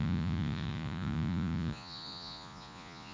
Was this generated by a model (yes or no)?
yes